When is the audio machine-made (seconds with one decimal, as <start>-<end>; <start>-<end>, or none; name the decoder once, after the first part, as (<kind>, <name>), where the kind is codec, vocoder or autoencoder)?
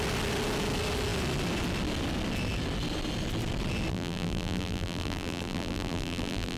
3.9-6.6 (vocoder, BigVGAN v2)